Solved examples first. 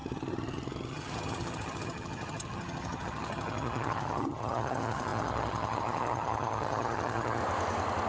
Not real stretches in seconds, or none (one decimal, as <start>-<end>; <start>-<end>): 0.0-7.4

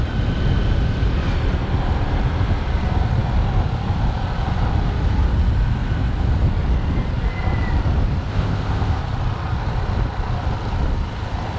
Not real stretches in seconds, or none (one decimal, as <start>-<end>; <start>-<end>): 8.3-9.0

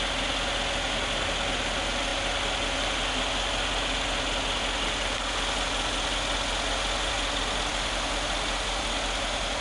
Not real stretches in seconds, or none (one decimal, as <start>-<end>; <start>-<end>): none

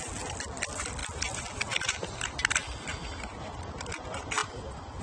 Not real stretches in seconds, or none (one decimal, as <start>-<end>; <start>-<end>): none